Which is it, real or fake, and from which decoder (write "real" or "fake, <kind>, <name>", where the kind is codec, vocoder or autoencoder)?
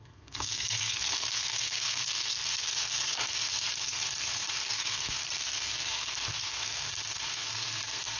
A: fake, codec, SNAC